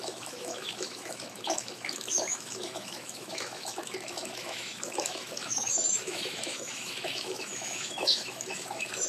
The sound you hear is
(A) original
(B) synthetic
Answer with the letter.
B